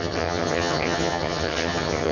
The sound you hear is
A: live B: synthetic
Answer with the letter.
B